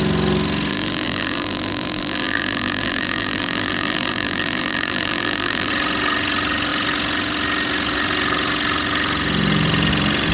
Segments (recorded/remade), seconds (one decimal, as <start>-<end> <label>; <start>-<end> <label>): 0.0-0.7 recorded; 0.7-5.7 remade; 5.7-10.3 recorded